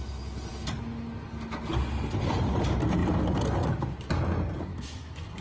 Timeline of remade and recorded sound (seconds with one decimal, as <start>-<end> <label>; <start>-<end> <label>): 0.0-4.7 recorded; 4.7-5.4 remade